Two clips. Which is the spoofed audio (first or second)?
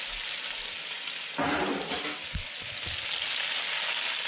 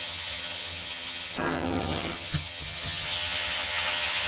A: second